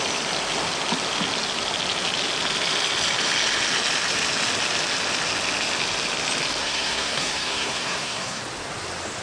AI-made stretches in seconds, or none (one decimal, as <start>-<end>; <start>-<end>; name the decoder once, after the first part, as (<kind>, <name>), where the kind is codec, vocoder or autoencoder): 6.6-8.4 (codec, SNAC)